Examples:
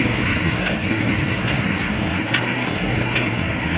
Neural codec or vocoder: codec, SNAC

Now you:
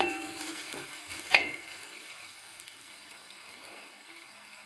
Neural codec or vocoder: codec, SNAC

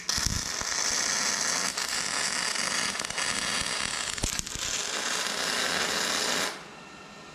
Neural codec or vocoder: none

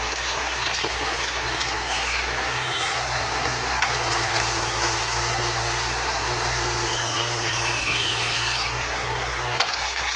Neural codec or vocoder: codec, SNAC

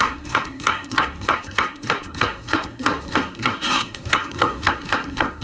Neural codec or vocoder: codec, SNAC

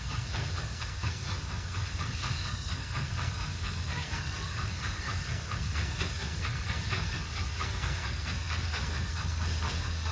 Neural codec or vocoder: codec, SNAC